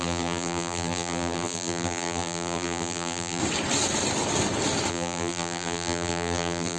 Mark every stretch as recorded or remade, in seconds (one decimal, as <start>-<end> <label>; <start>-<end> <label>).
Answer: 0.0-3.4 remade; 3.4-4.9 recorded; 4.9-6.8 remade

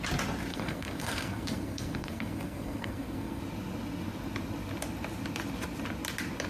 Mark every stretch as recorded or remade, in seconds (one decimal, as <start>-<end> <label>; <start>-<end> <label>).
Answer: 0.0-0.5 recorded; 0.5-3.4 remade; 3.4-6.5 recorded

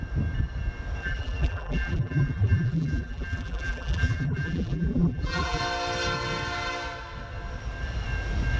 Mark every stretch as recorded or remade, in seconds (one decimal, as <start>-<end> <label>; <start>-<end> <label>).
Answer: 0.0-1.0 recorded; 1.0-5.6 remade; 5.6-8.6 recorded

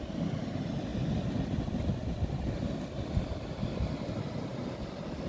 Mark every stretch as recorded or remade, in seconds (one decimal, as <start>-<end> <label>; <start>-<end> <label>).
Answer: 0.0-0.9 recorded; 0.9-4.1 remade; 4.1-5.3 recorded

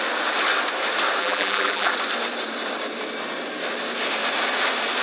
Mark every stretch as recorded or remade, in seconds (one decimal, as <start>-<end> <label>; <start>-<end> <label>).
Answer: 0.0-1.2 recorded; 1.2-1.9 remade; 1.9-5.0 recorded

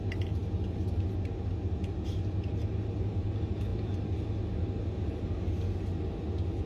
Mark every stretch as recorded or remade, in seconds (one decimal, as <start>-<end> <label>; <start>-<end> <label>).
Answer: 0.0-6.7 recorded

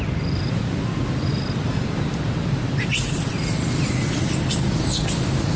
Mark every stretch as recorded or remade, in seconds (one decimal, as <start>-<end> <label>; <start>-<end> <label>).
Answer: 0.0-5.6 recorded

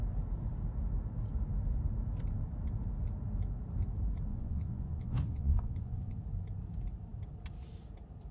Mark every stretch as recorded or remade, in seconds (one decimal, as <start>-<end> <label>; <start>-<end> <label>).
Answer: 0.0-4.3 recorded; 4.3-6.2 remade; 6.2-8.3 recorded